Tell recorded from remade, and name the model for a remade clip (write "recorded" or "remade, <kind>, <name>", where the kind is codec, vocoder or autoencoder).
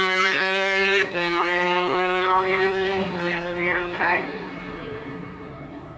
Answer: remade, codec, SNAC